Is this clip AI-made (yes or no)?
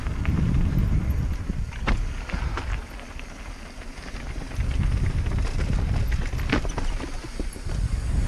no